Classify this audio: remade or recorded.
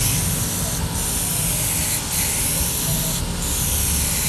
recorded